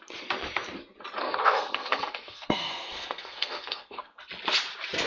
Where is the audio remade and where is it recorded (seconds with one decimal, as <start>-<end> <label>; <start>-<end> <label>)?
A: 0.0-1.2 recorded; 1.2-4.2 remade; 4.2-5.1 recorded